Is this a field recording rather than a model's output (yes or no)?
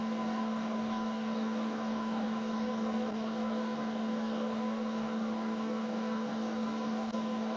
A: no